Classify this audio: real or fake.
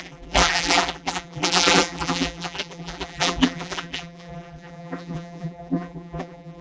fake